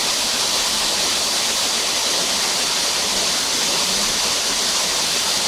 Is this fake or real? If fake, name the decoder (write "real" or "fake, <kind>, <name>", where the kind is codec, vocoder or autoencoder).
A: real